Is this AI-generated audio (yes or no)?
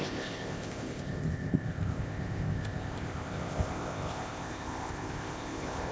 yes